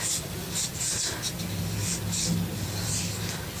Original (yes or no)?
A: yes